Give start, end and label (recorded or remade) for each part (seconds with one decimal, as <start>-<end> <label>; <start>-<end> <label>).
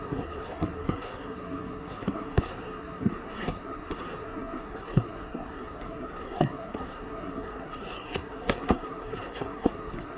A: 0.0-10.2 remade